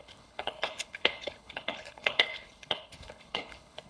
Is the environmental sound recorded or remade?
remade